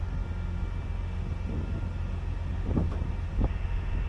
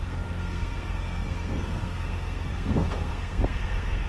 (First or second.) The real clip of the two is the first